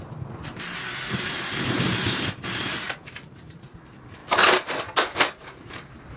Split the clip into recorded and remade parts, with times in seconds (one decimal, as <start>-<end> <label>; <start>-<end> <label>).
0.0-6.2 remade